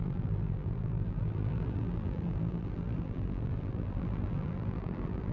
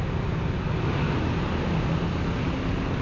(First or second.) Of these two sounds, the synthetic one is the first